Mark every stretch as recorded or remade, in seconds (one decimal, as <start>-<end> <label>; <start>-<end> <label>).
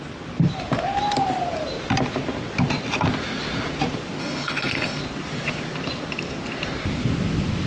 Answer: 0.0-4.2 recorded; 4.2-5.0 remade; 5.0-7.7 recorded